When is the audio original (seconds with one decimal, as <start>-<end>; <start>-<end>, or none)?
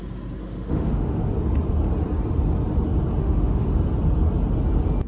0.0-0.4; 1.2-3.2; 3.7-5.1